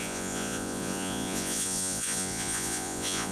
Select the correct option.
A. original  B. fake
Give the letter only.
B